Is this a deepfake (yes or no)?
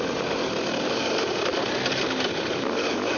no